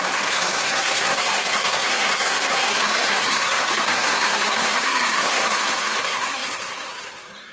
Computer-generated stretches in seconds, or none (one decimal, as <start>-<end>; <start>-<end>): 0.0-7.5